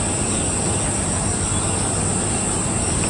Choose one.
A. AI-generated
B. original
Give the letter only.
B